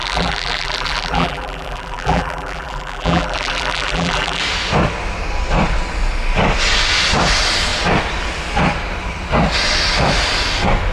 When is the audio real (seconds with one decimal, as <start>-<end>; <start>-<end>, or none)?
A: 4.4-10.9